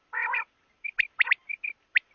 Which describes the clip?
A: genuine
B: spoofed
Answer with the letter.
A